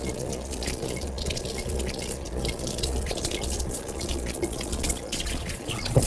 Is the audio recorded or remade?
remade